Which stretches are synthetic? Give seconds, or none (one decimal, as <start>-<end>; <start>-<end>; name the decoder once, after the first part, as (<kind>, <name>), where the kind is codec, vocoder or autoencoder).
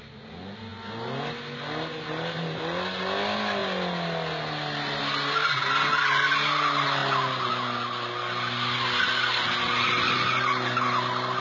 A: none